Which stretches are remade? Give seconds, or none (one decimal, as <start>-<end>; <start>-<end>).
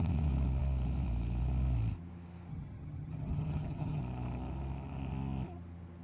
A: 2.5-4.0